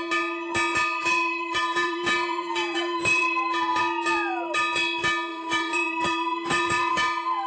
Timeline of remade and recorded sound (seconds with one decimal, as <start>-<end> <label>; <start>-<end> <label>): 0.0-1.0 recorded; 1.0-3.8 remade; 3.8-5.3 recorded; 5.3-6.9 remade; 6.9-7.5 recorded

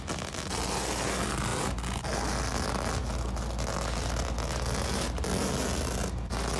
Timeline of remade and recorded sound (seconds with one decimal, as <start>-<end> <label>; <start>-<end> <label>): 0.0-6.6 recorded

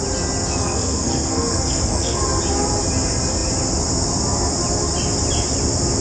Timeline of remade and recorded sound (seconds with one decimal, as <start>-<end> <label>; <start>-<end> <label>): 0.0-0.6 recorded; 0.6-2.2 remade; 2.2-6.0 recorded

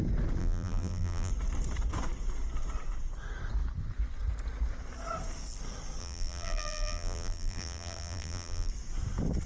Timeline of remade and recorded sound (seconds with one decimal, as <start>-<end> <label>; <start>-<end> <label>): 0.0-0.4 recorded; 0.4-1.3 remade; 1.3-6.0 recorded; 6.0-8.7 remade; 8.7-9.5 recorded

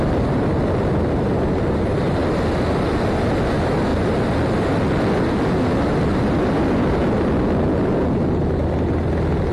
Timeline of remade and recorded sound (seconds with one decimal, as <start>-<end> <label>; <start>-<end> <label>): 0.0-9.5 recorded

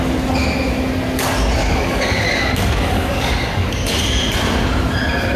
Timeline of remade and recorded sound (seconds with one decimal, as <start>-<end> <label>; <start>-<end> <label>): 0.0-1.6 recorded; 1.6-3.9 remade; 3.9-5.4 recorded

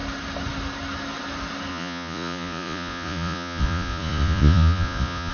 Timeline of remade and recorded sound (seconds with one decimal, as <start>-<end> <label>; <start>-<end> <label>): 0.0-1.7 recorded; 1.7-5.3 remade

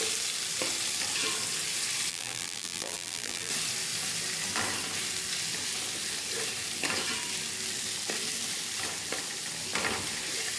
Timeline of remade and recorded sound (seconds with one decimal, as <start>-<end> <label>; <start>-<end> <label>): 0.0-2.1 recorded; 2.1-3.5 remade; 3.5-10.6 recorded